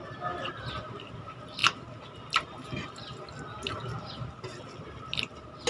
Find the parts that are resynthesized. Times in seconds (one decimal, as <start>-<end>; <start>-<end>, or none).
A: none